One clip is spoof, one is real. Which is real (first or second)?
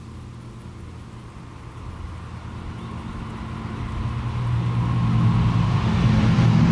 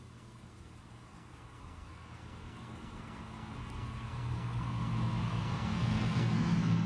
first